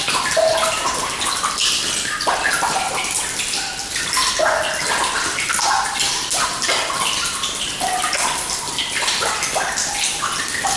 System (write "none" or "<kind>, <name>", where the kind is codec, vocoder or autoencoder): none